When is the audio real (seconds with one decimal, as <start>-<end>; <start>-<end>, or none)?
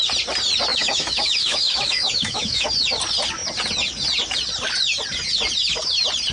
0.0-0.7; 2.7-6.3